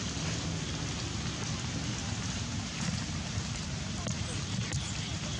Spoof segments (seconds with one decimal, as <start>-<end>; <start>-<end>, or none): 2.0-5.4